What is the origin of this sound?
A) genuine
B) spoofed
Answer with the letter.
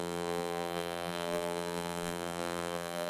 B